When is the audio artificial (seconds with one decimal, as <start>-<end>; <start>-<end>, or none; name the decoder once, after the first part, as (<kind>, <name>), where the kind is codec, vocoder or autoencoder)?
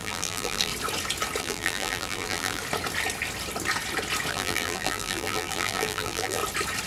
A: 0.0-0.7 (vocoder, BigVGAN v2); 1.4-2.6; 4.3-6.4